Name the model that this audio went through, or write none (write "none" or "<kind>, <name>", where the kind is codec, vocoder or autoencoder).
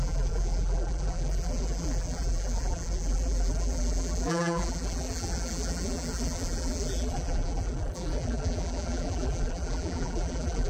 vocoder, BigVGAN v2